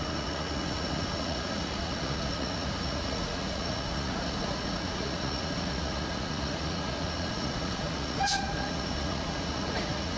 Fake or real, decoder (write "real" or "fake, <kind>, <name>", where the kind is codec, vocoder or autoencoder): fake, vocoder, Vocos